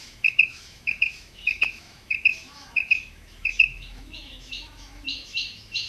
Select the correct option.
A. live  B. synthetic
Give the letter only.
B